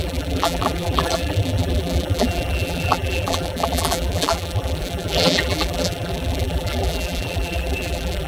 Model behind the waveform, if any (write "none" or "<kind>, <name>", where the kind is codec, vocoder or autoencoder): vocoder, BigVGAN v2